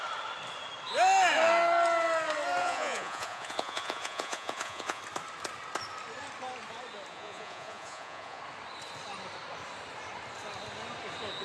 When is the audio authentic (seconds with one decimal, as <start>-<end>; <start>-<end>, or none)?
0.0-2.6; 5.0-7.1; 8.4-11.4

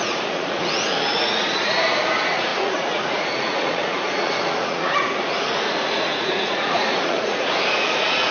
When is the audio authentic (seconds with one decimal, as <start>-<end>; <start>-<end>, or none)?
none

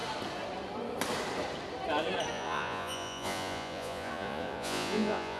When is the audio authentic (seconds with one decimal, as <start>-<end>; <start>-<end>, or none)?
0.0-2.3

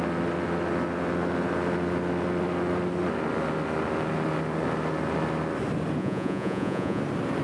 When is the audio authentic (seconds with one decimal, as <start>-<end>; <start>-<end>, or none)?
0.0-6.0; 7.0-7.4